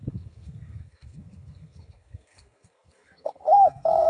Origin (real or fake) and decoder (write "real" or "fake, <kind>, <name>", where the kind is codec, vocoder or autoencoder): fake, codec, SNAC